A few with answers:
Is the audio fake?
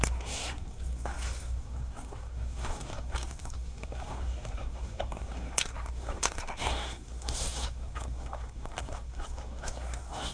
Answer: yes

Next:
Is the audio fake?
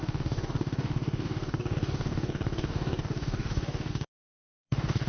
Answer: yes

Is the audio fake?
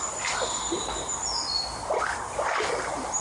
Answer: no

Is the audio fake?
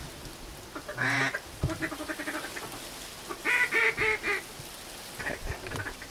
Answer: no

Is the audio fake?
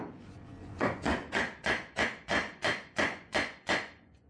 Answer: yes